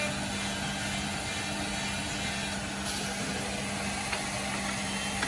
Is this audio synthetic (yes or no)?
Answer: no